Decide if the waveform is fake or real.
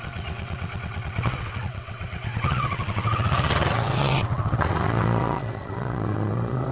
fake